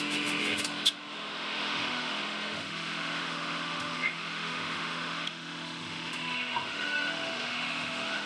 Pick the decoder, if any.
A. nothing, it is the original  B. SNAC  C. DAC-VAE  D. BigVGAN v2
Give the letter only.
C